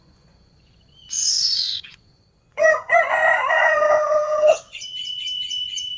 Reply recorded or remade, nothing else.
remade